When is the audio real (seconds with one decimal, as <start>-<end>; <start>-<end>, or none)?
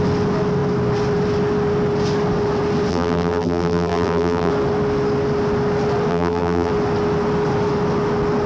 0.0-2.9; 4.5-6.1; 6.7-8.5